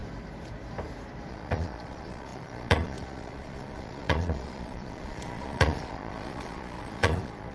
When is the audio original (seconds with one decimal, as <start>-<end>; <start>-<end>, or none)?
0.0-1.3

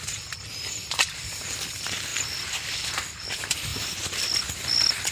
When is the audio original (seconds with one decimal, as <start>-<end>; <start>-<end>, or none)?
none

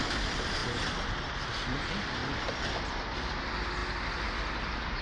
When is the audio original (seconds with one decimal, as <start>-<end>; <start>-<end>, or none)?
0.0-0.6; 1.2-2.2; 3.0-5.0

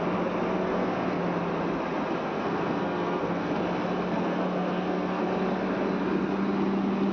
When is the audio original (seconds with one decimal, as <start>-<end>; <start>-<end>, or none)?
0.0-0.6; 1.2-2.2; 3.6-4.1; 5.2-7.1